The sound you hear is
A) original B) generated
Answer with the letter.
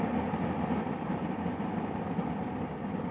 A